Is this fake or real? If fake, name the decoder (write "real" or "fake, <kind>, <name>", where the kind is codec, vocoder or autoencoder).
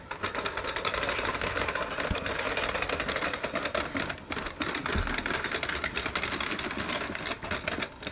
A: real